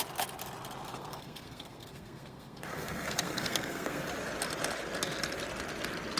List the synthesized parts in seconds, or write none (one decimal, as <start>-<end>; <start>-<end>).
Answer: 0.9-4.1